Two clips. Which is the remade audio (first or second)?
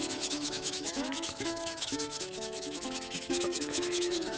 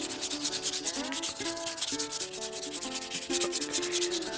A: first